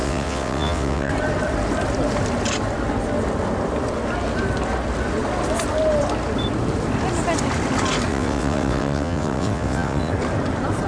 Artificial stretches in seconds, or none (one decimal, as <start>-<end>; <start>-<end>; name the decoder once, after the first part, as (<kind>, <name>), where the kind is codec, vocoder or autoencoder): 0.0-1.1 (vocoder, WaveNeXt); 8.1-10.1